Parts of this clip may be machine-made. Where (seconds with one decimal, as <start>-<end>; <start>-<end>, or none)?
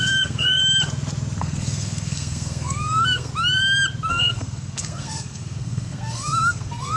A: 0.0-0.6; 1.4-3.3; 4.1-7.0